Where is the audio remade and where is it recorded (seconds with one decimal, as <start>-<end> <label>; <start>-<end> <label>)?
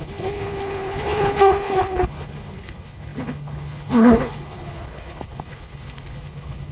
0.0-6.7 remade